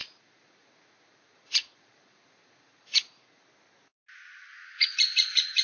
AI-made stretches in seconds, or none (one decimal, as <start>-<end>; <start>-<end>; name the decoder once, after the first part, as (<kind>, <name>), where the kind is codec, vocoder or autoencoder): 0.0-3.4 (vocoder, Vocos); 4.5-5.6

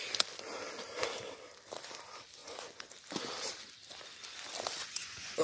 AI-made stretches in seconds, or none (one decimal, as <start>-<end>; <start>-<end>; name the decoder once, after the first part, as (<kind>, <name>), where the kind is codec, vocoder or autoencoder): 2.4-2.9 (vocoder, Vocos); 4.8-5.4

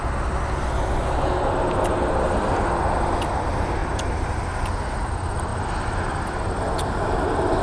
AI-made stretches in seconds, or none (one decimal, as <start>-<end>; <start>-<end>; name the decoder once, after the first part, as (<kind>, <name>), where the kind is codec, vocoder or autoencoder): none

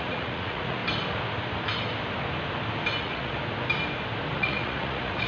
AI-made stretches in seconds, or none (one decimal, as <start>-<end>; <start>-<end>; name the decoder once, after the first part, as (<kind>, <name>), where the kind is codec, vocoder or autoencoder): 0.0-0.8 (vocoder, Vocos); 3.0-3.4; 4.3-5.3

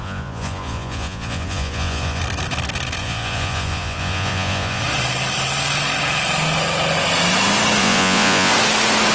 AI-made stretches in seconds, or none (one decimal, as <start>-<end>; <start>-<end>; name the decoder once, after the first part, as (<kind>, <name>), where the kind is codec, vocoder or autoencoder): 0.0-2.2 (vocoder, Vocos); 3.0-4.8; 7.8-8.5

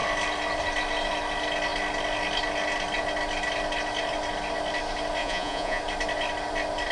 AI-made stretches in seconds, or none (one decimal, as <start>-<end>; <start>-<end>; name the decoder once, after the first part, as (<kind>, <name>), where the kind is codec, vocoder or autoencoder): 5.2-5.8 (vocoder, Vocos)

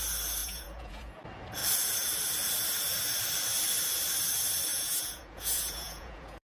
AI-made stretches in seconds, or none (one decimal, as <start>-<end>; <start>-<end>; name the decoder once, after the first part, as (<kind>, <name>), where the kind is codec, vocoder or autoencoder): 0.4-1.2 (vocoder, Vocos); 4.7-6.5